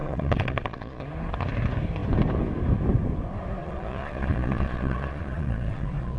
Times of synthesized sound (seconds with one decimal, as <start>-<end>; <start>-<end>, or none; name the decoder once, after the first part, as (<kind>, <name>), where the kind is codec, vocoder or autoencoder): 0.0-1.0 (vocoder, Vocos); 3.6-6.2